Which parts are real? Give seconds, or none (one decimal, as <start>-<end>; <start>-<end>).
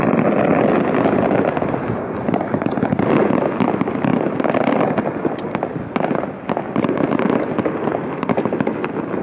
0.0-9.2